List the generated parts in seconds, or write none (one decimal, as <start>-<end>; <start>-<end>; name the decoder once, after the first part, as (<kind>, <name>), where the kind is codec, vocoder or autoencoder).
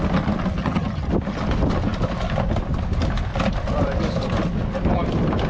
0.6-1.1 (vocoder, HiFi-GAN)